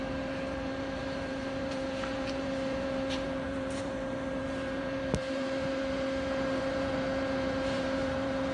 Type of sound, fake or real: fake